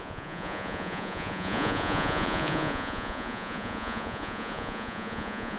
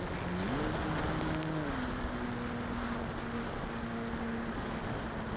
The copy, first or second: first